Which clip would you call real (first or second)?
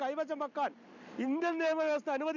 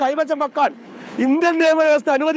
first